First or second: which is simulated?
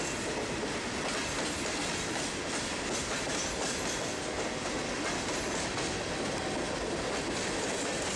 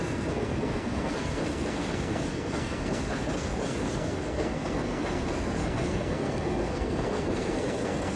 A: second